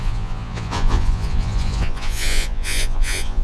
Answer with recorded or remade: remade